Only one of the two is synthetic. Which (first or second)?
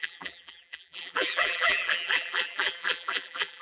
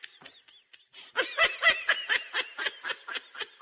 first